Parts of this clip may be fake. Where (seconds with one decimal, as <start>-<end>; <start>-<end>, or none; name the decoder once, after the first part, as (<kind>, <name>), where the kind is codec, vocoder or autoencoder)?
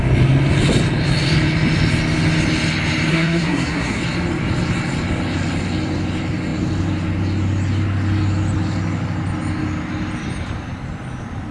3.1-4.0 (codec, SNAC)